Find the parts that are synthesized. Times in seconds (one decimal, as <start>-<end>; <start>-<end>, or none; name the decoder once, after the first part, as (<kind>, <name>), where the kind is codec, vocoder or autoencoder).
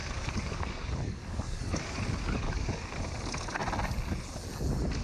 0.0-3.0 (codec, DAC)